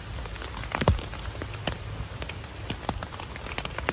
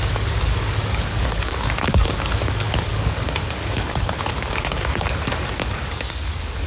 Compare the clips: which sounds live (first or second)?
first